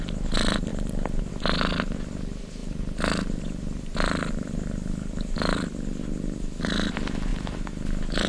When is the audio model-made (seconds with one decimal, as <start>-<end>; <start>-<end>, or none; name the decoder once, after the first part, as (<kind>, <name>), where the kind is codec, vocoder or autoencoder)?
0.7-1.3 (vocoder, BigVGAN v2); 2.6-6.7; 7.3-8.3